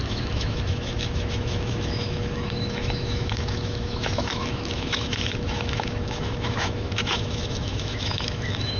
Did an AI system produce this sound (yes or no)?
yes